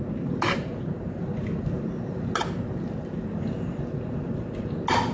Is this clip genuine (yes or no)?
yes